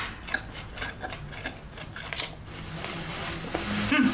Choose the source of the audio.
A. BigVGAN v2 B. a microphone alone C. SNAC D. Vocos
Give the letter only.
B